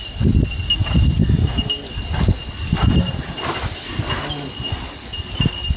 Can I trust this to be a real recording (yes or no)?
yes